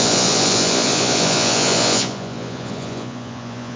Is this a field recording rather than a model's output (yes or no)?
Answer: no